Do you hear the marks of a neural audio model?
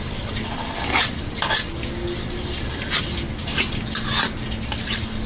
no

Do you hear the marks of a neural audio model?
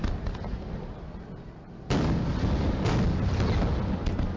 no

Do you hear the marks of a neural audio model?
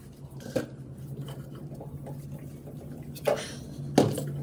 no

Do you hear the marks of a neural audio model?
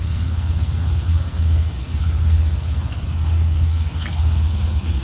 yes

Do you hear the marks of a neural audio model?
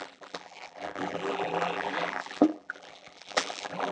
yes